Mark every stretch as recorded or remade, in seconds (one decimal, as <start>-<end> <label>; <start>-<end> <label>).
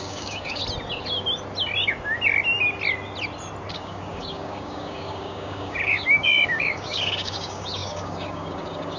0.0-0.6 remade; 0.6-3.7 recorded; 3.7-9.0 remade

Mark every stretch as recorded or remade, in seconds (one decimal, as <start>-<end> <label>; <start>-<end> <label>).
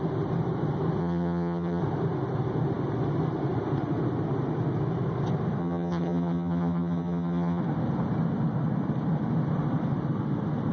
0.0-1.0 recorded; 1.0-1.8 remade; 1.8-5.6 recorded; 5.6-7.6 remade; 7.6-10.7 recorded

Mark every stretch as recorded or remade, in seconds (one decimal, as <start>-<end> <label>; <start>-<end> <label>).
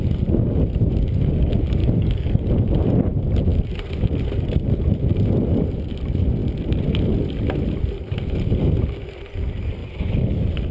0.0-1.8 recorded; 1.8-2.5 remade; 2.5-10.7 recorded